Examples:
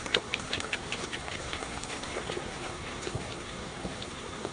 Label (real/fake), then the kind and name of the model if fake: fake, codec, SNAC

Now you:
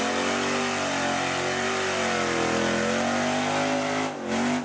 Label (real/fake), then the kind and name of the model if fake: real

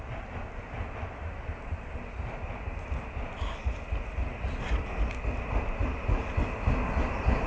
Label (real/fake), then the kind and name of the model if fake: real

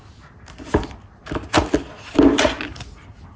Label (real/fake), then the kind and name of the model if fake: real